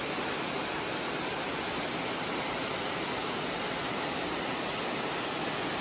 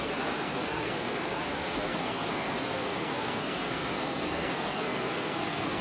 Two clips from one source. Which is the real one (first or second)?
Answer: first